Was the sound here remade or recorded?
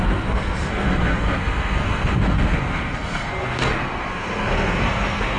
remade